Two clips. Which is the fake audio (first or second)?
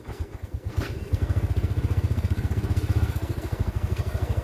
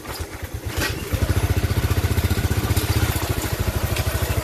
first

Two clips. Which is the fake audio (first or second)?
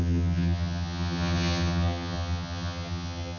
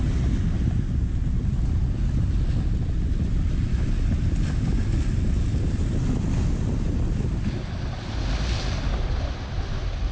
first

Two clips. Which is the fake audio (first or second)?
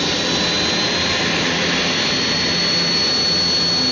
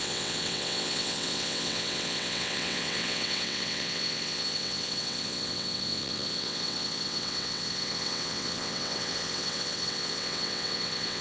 second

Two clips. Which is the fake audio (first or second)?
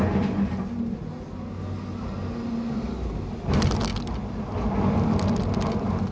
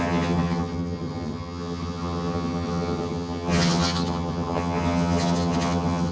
second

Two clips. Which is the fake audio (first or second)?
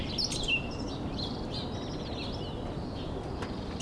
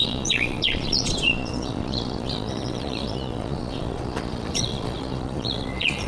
second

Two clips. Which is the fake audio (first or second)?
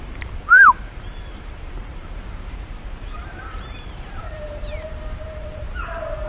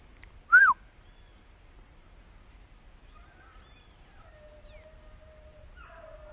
first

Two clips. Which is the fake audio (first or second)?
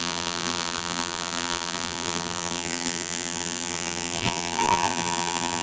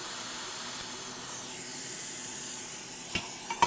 first